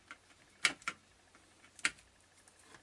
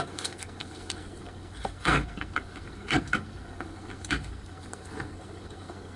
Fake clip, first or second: second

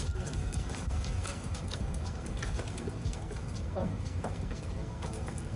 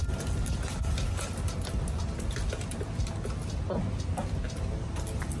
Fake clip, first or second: first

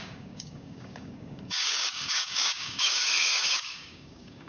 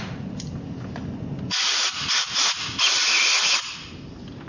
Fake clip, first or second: first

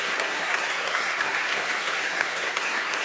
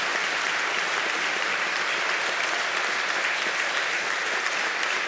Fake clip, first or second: first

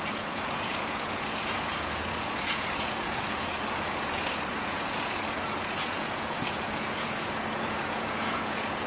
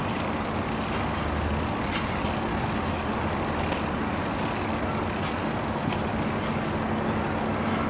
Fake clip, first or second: first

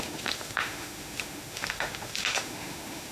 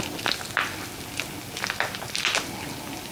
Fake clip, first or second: first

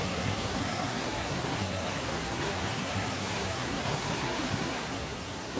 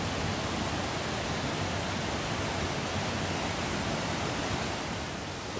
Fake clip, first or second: first